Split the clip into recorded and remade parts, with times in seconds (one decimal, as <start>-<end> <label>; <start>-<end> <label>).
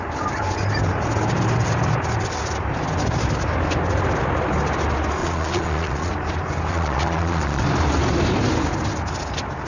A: 0.0-5.2 recorded; 5.2-6.1 remade; 6.1-6.7 recorded; 6.7-7.6 remade; 7.6-9.7 recorded